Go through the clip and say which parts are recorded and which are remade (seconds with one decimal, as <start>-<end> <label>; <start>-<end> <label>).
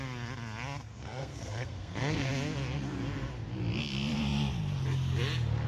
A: 0.0-0.9 recorded; 0.9-2.3 remade; 2.3-5.7 recorded